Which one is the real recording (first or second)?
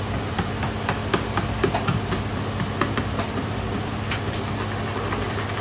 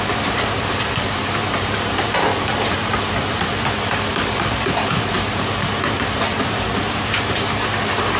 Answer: first